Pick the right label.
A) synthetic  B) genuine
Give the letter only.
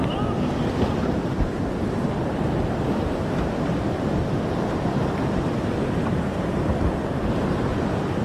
B